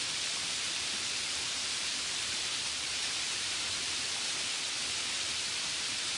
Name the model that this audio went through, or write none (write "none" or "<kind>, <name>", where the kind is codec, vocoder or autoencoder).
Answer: vocoder, BigVGAN v2